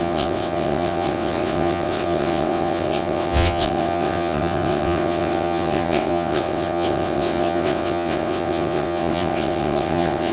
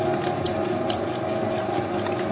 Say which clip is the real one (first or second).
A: second